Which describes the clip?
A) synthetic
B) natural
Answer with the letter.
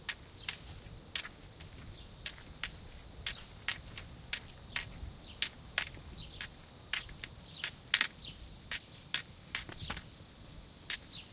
B